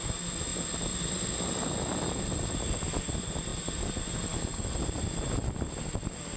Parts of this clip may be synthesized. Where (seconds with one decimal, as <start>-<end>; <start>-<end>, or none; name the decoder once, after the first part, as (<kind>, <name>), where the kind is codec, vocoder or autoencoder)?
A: none